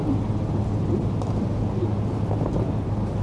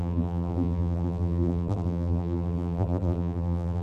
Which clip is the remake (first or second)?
second